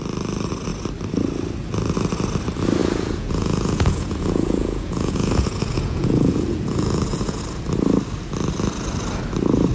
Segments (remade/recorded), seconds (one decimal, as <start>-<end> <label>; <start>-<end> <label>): 0.0-2.8 recorded; 2.8-7.4 remade; 7.4-9.7 recorded